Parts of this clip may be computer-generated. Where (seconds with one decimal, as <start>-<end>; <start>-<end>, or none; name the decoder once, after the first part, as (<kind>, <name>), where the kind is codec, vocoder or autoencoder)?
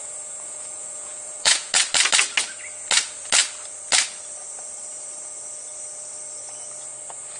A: 0.0-1.7 (vocoder, Vocos)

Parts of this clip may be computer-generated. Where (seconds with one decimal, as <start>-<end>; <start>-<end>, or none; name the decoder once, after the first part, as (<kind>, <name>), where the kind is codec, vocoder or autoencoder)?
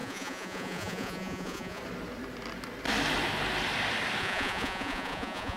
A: 0.0-1.8 (vocoder, Vocos); 4.2-5.6